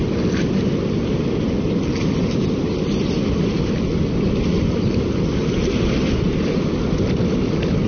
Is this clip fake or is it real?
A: real